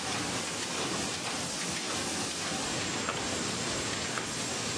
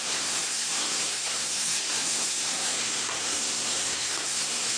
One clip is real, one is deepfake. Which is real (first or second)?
first